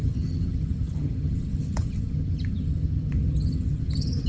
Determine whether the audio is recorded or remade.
remade